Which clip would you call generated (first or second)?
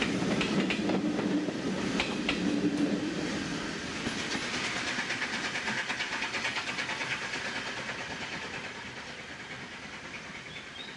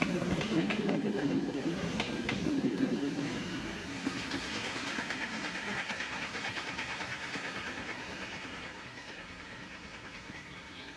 second